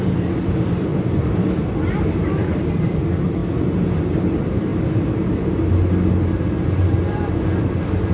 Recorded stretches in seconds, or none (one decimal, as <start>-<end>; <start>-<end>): 3.4-4.0; 4.7-6.8